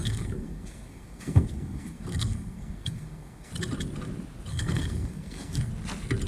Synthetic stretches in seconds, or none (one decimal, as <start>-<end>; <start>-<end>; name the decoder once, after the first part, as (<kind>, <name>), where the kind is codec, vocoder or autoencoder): 0.0-3.5 (codec, SNAC); 4.5-5.7